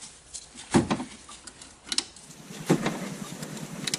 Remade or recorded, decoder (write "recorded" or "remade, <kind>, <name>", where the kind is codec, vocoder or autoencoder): recorded